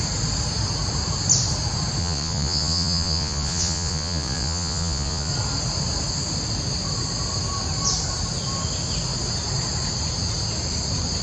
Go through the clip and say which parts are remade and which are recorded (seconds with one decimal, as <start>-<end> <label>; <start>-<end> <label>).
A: 0.0-2.0 recorded; 2.0-5.3 remade; 5.3-11.2 recorded